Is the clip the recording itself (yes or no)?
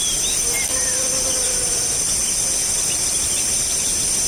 yes